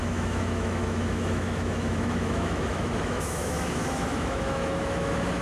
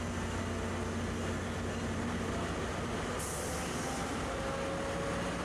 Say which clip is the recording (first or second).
second